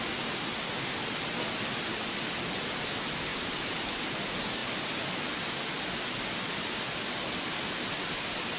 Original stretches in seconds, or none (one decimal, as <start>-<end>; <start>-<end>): 0.0-3.3; 3.9-8.6